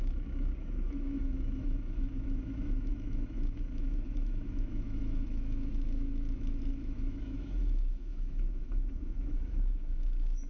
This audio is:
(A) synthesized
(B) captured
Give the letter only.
A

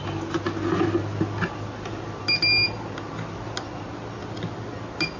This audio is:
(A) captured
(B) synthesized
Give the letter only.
A